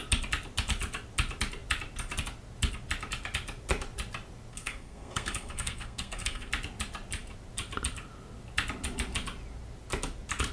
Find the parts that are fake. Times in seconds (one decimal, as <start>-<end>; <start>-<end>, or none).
4.5-6.5